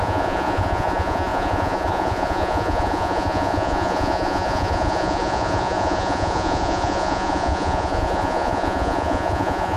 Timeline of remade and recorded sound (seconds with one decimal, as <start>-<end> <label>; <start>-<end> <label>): 0.0-9.8 remade